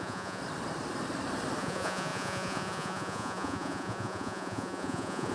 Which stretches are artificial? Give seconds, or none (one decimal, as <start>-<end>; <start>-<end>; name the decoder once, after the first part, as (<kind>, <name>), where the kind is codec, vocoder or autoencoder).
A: 0.0-0.4 (vocoder, Vocos); 1.6-5.3